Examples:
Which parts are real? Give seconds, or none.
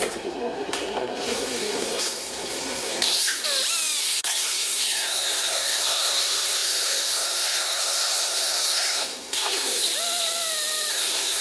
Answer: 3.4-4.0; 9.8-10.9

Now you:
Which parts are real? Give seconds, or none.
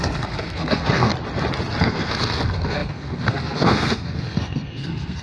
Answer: 1.1-1.8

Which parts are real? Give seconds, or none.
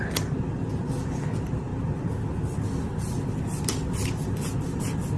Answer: 0.0-5.2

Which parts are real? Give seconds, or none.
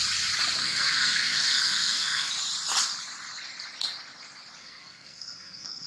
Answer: 0.0-0.6; 2.3-4.6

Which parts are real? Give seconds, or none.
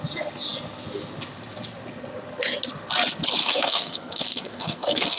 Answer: 0.0-3.4